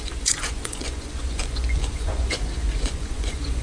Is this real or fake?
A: fake